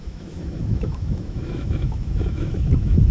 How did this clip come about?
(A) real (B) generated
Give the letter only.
B